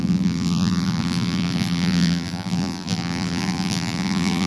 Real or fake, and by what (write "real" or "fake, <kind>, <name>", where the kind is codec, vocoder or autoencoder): fake, vocoder, BigVGAN v2